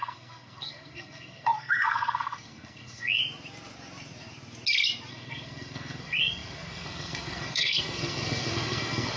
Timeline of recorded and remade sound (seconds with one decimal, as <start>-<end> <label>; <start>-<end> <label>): 0.0-3.2 remade; 3.2-5.1 recorded; 5.1-9.2 remade